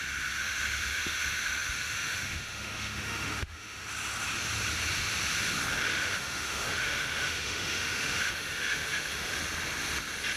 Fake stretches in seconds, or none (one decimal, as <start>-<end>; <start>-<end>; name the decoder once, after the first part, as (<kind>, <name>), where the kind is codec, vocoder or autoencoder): 0.4-3.8 (autoencoder, DAC-VAE); 5.9-9.4